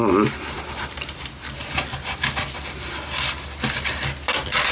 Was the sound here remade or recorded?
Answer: recorded